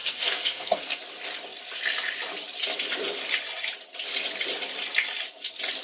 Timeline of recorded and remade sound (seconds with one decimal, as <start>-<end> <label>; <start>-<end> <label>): 0.0-1.0 remade; 1.0-5.8 recorded

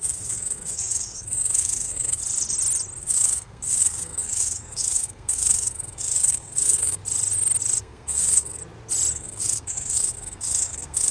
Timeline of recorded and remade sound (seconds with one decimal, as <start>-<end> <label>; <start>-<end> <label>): 0.0-2.2 remade; 2.2-3.0 recorded; 3.0-7.0 remade; 7.0-7.8 recorded; 7.8-8.6 remade; 8.6-9.1 recorded; 9.1-11.1 remade

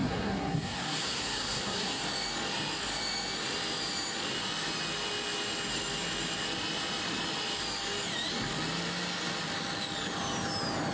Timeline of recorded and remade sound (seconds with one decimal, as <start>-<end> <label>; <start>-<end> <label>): 0.0-2.0 remade; 2.0-10.9 recorded

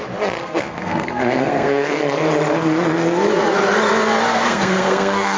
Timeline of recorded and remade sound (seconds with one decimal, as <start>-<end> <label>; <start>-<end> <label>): 0.0-0.4 recorded; 0.4-2.0 remade; 2.0-4.3 recorded; 4.3-5.4 remade